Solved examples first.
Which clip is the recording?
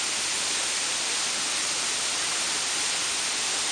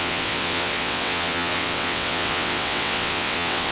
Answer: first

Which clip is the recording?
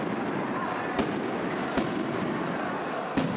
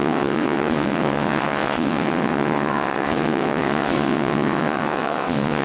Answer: first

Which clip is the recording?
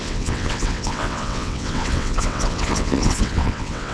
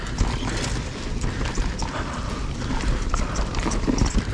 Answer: second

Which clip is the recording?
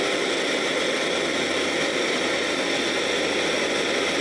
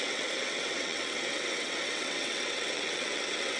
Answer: first